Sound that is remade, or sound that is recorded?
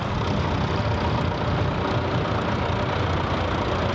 recorded